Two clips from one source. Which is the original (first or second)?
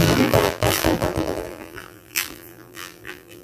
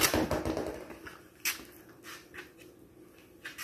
second